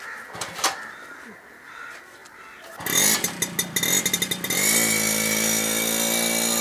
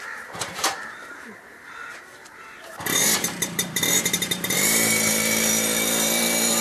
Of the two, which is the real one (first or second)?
first